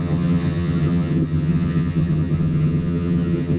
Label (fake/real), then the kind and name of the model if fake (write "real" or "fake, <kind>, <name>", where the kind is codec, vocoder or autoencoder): fake, vocoder, HiFi-GAN